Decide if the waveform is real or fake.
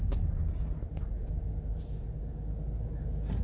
real